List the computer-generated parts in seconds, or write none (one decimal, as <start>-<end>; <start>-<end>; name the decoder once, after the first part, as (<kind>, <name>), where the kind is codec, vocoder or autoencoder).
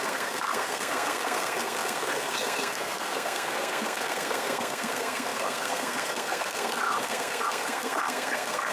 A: 0.0-8.7 (codec, SNAC)